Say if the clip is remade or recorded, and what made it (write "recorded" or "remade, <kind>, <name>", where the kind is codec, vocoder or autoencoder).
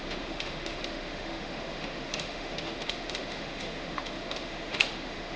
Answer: remade, autoencoder, DAC-VAE